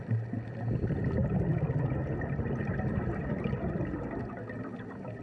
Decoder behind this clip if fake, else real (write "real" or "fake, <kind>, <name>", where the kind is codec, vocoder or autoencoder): real